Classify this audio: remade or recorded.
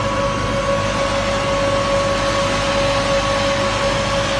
recorded